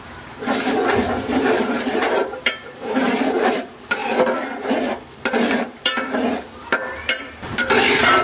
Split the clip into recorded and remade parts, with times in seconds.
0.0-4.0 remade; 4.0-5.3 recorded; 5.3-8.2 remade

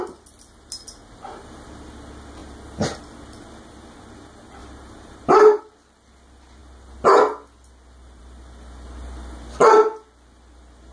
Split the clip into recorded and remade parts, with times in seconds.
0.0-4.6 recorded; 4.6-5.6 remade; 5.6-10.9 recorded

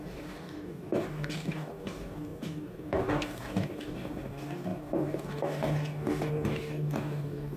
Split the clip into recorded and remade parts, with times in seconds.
0.0-7.6 remade